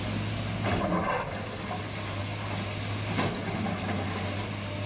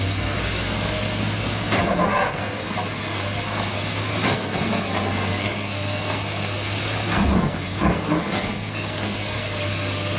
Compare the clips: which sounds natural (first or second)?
first